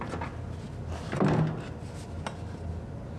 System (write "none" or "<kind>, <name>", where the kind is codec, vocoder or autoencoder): none